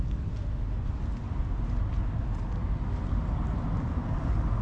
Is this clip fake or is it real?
real